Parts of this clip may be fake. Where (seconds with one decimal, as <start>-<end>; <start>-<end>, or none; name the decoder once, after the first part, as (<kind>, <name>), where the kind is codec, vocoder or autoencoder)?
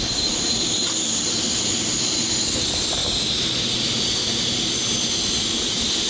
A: 0.0-3.0 (vocoder, BigVGAN v2)